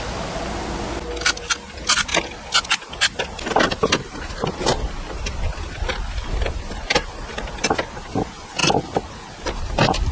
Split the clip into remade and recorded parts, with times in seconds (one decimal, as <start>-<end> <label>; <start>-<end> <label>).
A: 0.0-10.1 recorded